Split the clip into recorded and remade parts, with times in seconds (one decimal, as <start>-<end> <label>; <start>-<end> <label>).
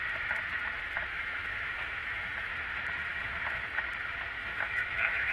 0.0-1.1 recorded; 1.1-2.5 remade; 2.5-3.1 recorded; 3.1-3.8 remade; 3.8-4.4 recorded; 4.4-5.3 remade